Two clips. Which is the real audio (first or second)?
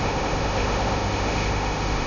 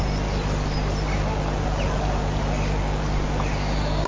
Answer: second